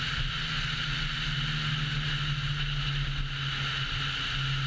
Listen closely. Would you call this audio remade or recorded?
recorded